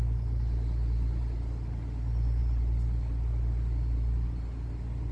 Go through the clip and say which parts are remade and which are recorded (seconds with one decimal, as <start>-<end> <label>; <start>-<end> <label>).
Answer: 0.0-5.1 recorded